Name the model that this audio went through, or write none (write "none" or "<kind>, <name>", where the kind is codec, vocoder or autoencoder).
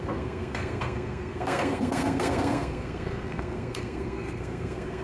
codec, SNAC